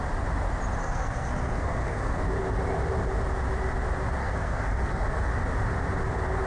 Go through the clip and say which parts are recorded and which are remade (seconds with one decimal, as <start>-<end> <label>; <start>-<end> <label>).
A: 0.0-0.8 recorded; 0.8-2.2 remade; 2.2-4.2 recorded; 4.2-5.3 remade; 5.3-6.5 recorded

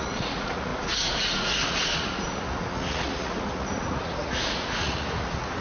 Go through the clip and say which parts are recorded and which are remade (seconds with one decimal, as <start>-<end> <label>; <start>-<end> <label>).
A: 0.0-5.6 remade

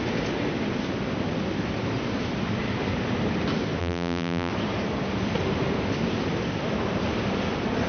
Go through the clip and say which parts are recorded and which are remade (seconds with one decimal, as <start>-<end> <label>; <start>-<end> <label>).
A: 0.0-3.8 recorded; 3.8-4.5 remade; 4.5-7.9 recorded

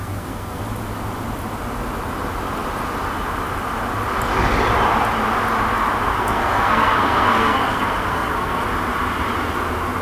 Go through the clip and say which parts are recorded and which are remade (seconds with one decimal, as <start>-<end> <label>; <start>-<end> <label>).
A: 0.0-0.6 remade; 0.6-6.1 recorded; 6.1-8.6 remade; 8.6-10.0 recorded

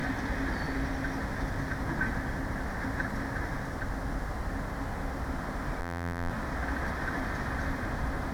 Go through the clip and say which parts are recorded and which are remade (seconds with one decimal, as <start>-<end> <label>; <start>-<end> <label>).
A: 0.0-5.8 recorded; 5.8-6.3 remade; 6.3-8.3 recorded

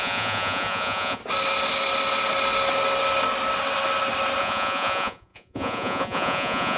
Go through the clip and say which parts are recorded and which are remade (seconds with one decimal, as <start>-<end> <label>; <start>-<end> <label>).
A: 0.0-1.2 remade; 1.2-4.4 recorded; 4.4-6.8 remade

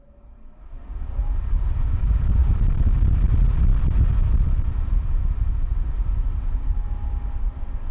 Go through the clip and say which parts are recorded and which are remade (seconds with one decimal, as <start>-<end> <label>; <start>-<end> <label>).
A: 0.0-7.9 recorded